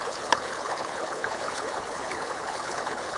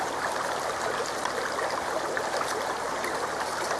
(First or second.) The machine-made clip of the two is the first